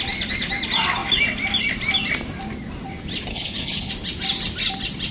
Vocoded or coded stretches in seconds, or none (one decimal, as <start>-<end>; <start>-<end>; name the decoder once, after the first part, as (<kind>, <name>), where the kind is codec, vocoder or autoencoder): 3.3-3.9 (codec, HILCodec)